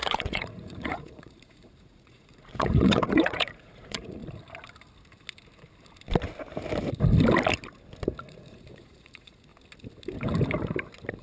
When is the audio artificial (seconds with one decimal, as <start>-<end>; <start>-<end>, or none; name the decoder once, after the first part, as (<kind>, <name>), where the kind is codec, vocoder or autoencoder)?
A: 0.0-4.2 (vocoder, Vocos); 8.2-9.5